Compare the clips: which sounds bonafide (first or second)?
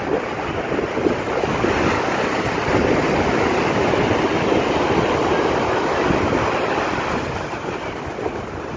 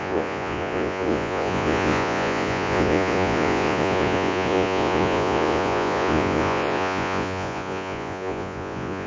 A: first